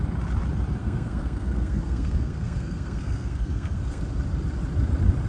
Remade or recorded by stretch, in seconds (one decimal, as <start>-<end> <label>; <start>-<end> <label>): 0.0-0.8 recorded; 0.8-4.0 remade; 4.0-5.3 recorded